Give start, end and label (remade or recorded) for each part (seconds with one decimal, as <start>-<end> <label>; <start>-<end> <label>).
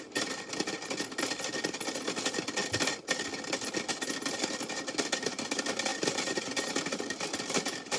0.0-5.9 recorded; 5.9-8.0 remade